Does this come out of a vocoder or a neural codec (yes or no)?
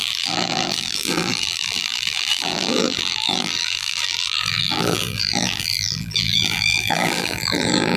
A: yes